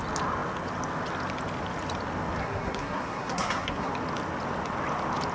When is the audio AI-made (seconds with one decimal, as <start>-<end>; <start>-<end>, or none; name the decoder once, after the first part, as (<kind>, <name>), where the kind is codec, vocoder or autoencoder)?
2.4-3.9 (codec, SNAC)